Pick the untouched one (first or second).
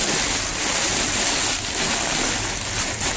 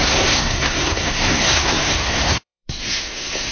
first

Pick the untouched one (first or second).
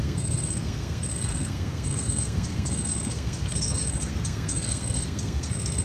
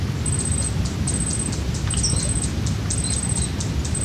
second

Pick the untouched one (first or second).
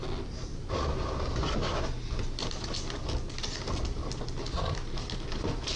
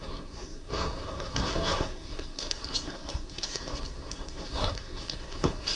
first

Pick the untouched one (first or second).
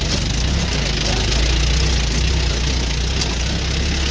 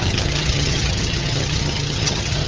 first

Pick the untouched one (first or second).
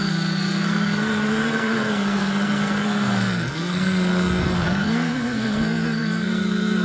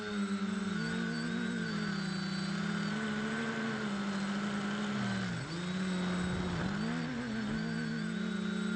second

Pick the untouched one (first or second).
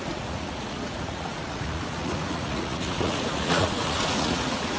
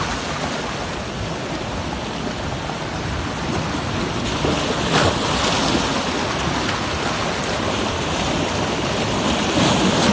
second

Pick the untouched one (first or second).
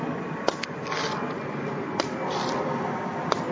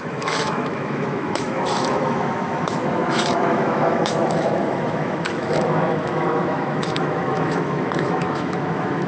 first